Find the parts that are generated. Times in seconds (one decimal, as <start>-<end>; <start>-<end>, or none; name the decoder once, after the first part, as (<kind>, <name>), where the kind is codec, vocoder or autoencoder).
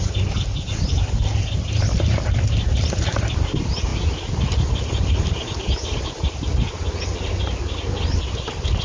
none